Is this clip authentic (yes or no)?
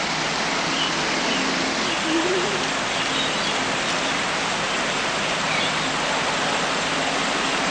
yes